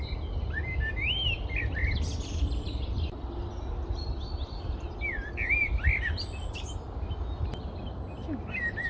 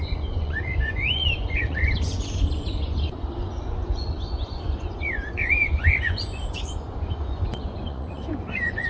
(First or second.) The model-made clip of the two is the second